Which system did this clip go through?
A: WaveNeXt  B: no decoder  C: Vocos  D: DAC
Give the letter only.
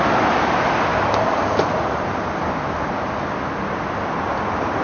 B